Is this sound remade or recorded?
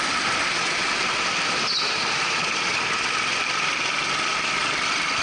recorded